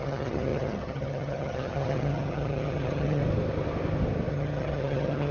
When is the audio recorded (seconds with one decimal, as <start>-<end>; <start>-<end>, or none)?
3.2-4.3

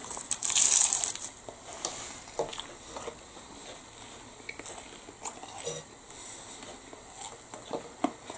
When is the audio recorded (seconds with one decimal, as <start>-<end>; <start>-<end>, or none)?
1.1-8.4